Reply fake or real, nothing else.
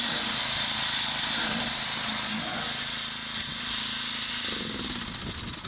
real